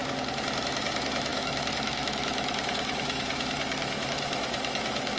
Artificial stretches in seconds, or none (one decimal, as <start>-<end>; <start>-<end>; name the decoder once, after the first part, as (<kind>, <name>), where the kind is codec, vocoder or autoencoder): 0.6-5.2 (autoencoder, DAC-VAE)